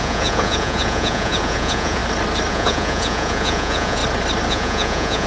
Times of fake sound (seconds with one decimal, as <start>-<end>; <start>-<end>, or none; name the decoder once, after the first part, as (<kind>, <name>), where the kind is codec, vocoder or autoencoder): 0.0-2.0 (vocoder, Vocos); 2.5-4.0; 4.5-5.3